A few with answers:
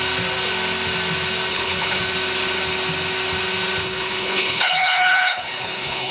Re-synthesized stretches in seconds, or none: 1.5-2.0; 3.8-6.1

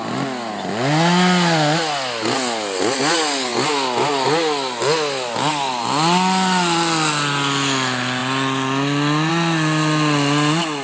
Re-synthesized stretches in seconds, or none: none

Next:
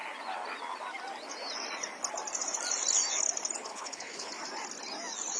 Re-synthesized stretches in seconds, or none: 3.7-4.3

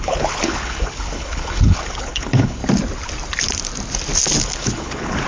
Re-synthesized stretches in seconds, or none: 0.0-2.6; 4.4-5.3

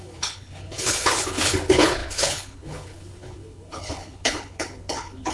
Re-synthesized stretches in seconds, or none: 0.0-5.3